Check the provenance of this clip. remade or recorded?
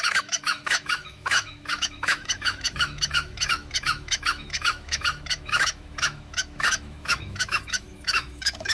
remade